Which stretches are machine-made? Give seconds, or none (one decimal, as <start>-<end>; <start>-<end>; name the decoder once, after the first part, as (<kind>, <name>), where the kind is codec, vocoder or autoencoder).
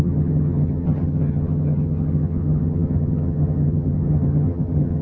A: 0.0-5.0 (vocoder, HiFi-GAN)